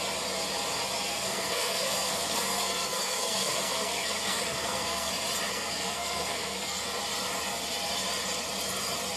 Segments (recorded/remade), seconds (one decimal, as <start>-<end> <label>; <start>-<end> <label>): 0.0-1.1 recorded; 1.1-5.1 remade; 5.1-5.5 recorded; 5.5-7.0 remade; 7.0-9.2 recorded